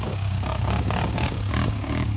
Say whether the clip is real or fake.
fake